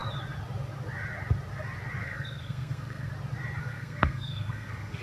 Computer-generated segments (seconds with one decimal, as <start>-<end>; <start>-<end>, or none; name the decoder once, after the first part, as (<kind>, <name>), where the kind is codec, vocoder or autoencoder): 2.0-3.1 (codec, SNAC); 3.6-5.0